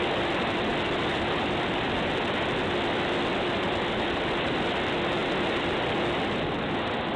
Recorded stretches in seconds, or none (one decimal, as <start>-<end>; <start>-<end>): 0.0-7.2